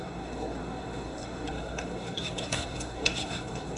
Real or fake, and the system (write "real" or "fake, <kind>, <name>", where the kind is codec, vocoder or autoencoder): fake, codec, SNAC